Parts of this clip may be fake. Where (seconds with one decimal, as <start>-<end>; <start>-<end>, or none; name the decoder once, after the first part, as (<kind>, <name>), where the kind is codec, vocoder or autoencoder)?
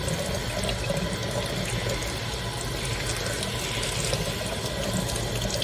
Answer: none